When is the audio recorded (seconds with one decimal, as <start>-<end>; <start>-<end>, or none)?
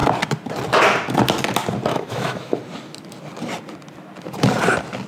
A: 0.0-1.9; 2.6-5.1